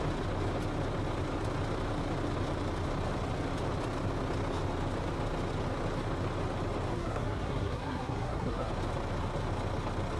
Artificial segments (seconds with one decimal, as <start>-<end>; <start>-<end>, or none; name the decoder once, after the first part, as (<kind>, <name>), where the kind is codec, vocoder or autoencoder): 6.9-8.7 (codec, SNAC)